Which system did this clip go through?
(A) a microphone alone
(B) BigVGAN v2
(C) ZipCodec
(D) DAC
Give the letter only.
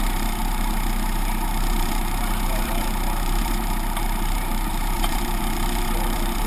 B